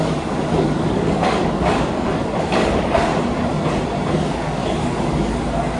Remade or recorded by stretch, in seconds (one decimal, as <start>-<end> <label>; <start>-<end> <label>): 0.0-3.1 remade; 3.1-4.1 recorded; 4.1-5.8 remade